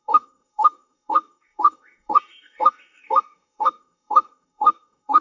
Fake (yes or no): yes